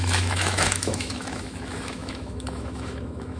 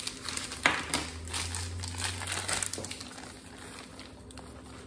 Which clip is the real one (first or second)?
second